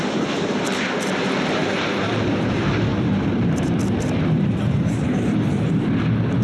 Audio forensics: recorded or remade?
remade